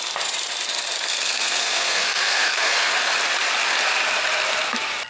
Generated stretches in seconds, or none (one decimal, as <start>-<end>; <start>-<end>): 1.1-2.9